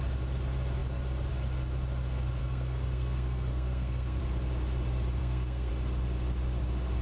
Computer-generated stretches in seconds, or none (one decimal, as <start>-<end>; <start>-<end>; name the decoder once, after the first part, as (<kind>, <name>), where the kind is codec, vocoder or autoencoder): 2.4-4.2 (codec, SNAC); 5.2-5.7